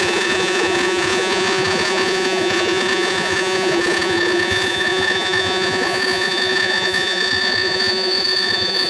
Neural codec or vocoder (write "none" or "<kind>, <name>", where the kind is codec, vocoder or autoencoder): vocoder, Vocos